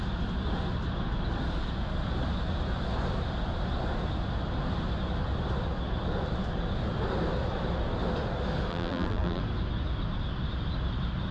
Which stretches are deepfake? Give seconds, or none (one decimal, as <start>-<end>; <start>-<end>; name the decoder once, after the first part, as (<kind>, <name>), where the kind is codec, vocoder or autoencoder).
8.7-9.4 (vocoder, BigVGAN v2)